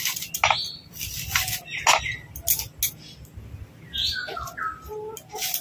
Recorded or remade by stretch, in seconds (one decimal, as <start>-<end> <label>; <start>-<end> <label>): 0.0-5.6 recorded